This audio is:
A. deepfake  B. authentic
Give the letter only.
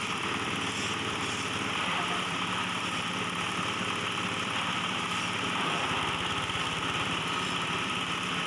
A